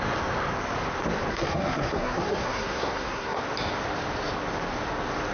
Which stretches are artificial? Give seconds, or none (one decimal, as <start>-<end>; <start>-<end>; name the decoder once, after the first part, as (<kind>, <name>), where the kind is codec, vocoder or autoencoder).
1.3-3.4 (codec, SNAC)